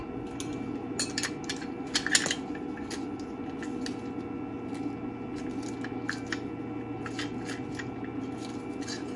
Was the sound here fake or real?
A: real